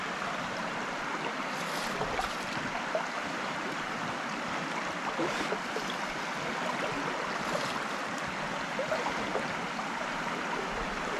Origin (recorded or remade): recorded